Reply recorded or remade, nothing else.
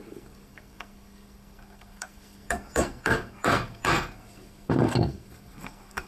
remade